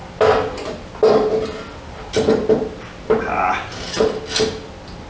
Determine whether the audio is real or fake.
real